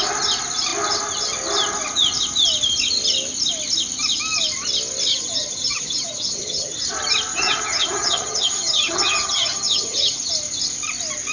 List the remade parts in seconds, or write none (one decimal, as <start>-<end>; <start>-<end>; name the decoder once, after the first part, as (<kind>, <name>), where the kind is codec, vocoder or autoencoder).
5.1-6.8 (vocoder, HiFi-GAN); 7.3-10.3